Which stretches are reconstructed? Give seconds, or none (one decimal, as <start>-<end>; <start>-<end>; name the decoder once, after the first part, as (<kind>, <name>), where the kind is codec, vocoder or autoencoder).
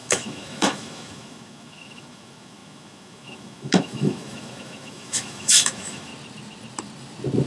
0.0-6.1 (autoencoder, DAC-VAE)